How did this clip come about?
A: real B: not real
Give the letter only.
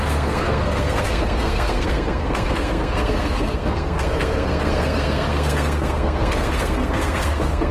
B